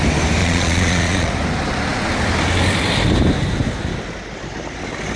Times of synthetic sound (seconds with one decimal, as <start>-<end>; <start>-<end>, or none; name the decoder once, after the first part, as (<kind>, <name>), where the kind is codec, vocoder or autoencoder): 0.4-1.3 (vocoder, Vocos)